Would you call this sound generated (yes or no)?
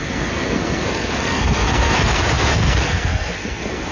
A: yes